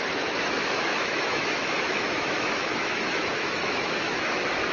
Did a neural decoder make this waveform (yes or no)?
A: yes